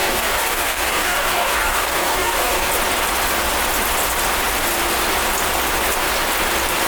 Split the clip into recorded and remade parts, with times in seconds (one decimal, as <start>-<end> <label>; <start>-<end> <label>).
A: 0.0-2.7 remade; 2.7-6.9 recorded